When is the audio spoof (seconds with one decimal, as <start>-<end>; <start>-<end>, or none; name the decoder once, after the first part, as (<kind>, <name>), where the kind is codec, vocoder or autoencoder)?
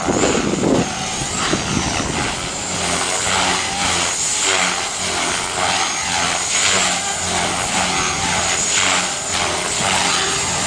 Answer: none